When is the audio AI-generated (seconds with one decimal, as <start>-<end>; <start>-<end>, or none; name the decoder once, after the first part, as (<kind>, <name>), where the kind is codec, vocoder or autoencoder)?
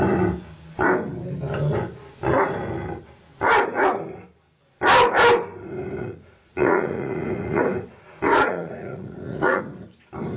6.0-7.6 (vocoder, Vocos); 8.3-9.6